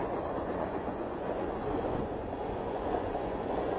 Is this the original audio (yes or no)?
no